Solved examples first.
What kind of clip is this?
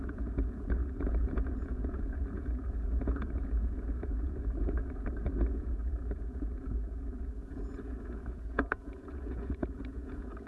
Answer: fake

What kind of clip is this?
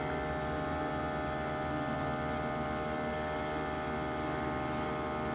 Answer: real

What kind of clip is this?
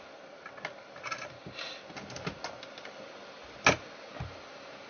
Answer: real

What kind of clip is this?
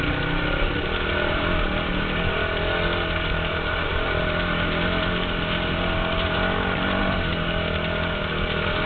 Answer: real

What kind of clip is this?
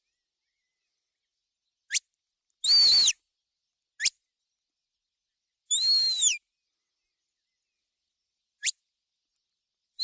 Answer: real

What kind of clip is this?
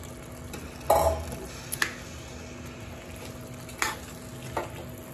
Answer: real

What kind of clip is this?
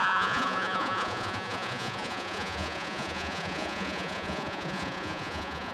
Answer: fake